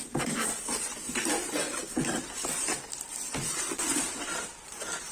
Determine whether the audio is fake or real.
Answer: fake